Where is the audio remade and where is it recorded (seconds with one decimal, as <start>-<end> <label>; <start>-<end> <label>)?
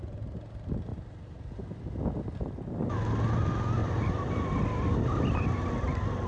0.0-0.9 recorded; 0.9-1.9 remade; 1.9-3.8 recorded; 3.8-5.4 remade; 5.4-6.3 recorded